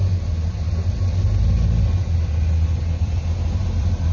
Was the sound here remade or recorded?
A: recorded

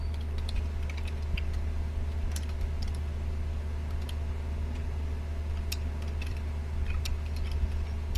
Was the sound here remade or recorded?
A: recorded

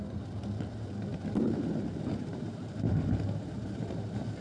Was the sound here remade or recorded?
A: remade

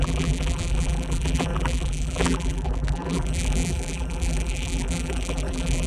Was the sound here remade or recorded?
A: remade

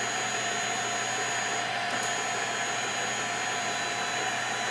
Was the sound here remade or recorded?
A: recorded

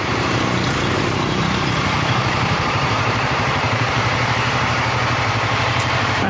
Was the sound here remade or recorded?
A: remade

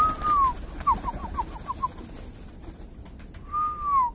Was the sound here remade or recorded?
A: recorded